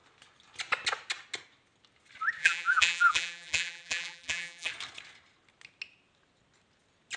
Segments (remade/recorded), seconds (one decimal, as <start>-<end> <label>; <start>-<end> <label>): 0.0-2.4 recorded; 2.4-4.7 remade; 4.7-7.2 recorded